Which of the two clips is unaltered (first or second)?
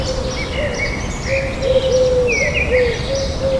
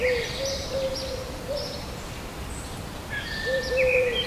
first